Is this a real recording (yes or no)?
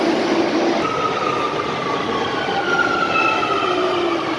yes